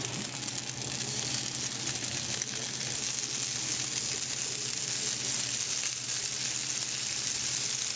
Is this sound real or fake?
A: real